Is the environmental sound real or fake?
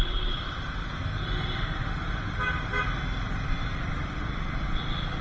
real